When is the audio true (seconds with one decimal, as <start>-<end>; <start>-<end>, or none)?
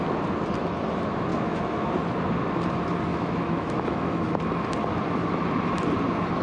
0.0-1.3; 1.9-3.1; 4.4-6.4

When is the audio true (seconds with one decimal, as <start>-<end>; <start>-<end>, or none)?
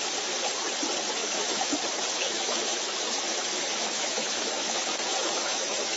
0.0-1.2; 1.7-2.1